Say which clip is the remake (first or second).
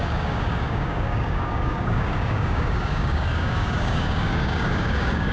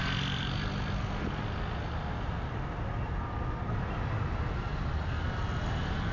first